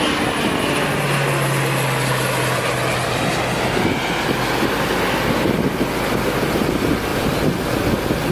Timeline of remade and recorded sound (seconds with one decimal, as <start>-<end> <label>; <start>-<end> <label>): 0.0-8.3 recorded